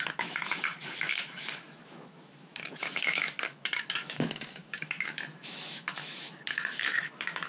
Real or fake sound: fake